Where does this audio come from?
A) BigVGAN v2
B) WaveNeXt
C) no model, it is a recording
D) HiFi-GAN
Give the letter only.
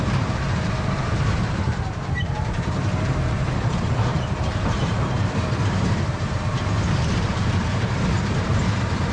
A